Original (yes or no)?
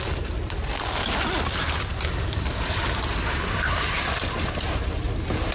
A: yes